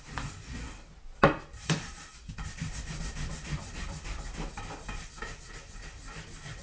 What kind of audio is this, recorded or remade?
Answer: recorded